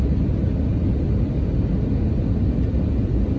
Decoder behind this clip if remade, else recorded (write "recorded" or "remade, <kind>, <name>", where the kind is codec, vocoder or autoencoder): recorded